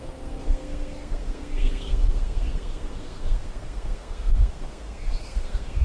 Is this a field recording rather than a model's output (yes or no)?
no